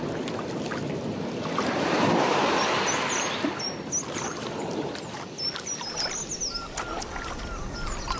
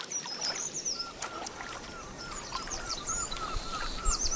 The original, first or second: first